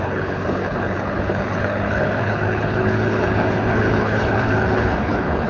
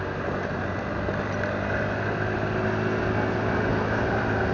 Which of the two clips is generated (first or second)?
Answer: first